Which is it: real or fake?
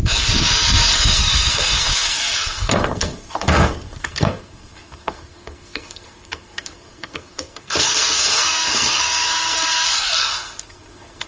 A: fake